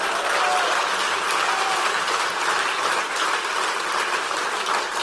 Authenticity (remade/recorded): recorded